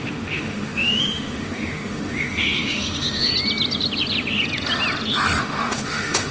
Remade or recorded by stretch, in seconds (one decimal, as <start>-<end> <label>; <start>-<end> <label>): 0.0-3.3 remade; 3.3-5.4 recorded; 5.4-6.3 remade